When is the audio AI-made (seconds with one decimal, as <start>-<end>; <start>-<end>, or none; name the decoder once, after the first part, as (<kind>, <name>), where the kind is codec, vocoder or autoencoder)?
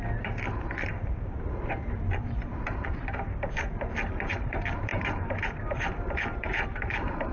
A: 0.5-7.3 (vocoder, BigVGAN v2)